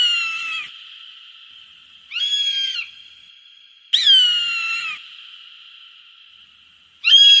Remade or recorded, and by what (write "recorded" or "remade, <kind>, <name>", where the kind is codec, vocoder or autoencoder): recorded